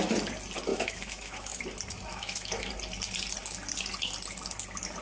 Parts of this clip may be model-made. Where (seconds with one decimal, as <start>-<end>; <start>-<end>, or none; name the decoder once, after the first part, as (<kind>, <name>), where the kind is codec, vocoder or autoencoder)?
0.7-1.6 (autoencoder, DAC-VAE); 2.1-2.7